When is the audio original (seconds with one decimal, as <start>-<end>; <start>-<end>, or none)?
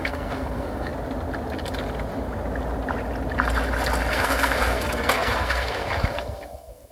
0.9-4.1